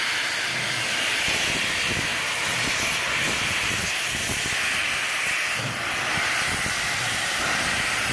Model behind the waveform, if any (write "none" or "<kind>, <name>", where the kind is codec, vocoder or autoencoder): none